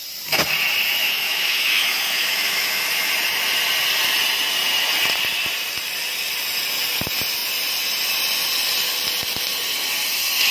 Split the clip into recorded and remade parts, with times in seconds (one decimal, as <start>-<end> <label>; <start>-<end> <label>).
0.0-1.0 recorded; 1.0-3.1 remade; 3.1-10.5 recorded